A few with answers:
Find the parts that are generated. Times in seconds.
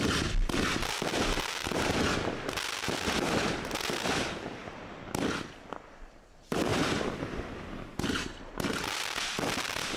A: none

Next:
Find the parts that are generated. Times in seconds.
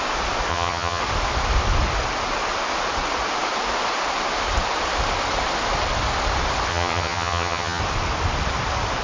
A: 0.5-1.0 (vocoder, HiFi-GAN); 6.7-7.8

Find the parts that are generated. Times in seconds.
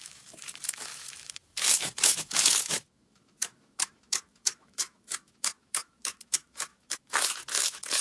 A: 0.0-8.0 (autoencoder, DAC-VAE)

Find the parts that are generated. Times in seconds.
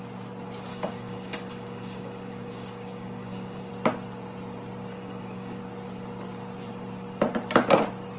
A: 0.7-3.7 (codec, DAC); 4.9-5.6